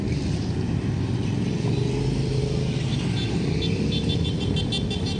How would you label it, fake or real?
real